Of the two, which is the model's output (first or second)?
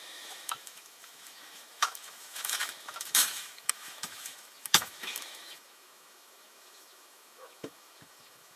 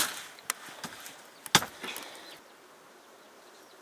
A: first